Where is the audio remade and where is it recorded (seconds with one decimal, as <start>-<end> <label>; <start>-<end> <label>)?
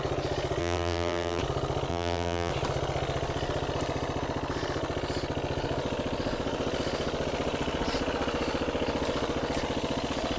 0.0-0.6 recorded; 0.6-1.4 remade; 1.4-1.9 recorded; 1.9-2.5 remade; 2.5-10.4 recorded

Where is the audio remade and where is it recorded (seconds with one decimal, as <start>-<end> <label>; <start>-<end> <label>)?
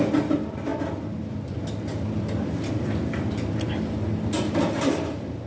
0.0-1.9 recorded; 1.9-5.5 remade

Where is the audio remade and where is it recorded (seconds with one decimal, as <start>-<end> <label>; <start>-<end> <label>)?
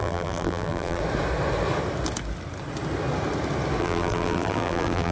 0.0-1.0 remade; 1.0-3.8 recorded; 3.8-5.1 remade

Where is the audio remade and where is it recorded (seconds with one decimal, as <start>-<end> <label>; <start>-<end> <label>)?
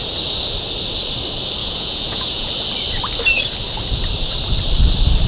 0.0-1.6 recorded; 1.6-2.5 remade; 2.5-5.3 recorded